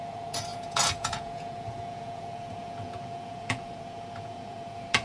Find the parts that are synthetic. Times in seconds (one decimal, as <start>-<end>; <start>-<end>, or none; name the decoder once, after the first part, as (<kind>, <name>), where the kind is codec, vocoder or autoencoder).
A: 0.0-5.0 (vocoder, Vocos)